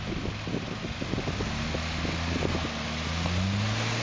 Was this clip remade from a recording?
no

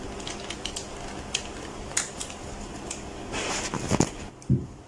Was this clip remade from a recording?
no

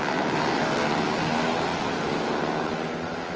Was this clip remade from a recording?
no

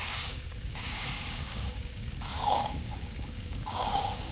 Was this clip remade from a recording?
yes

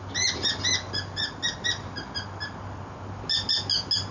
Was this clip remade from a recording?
no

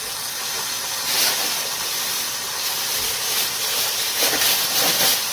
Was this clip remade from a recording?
no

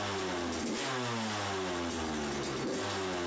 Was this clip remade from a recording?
no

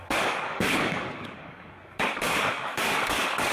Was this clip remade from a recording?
yes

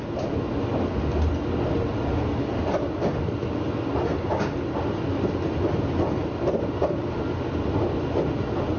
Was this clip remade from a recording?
no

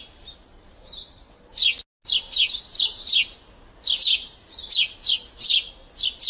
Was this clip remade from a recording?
no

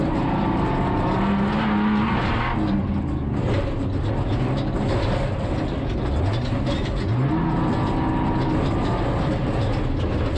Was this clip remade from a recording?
no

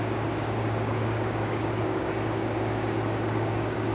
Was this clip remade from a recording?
yes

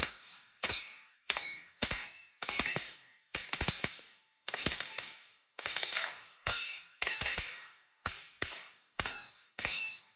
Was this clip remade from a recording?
yes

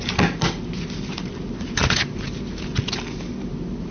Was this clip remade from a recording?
no